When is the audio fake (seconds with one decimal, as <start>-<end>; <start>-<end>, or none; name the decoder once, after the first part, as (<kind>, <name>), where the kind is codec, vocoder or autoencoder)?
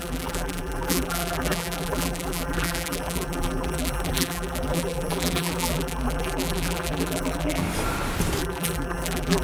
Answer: 0.0-7.6 (vocoder, BigVGAN v2); 8.4-9.4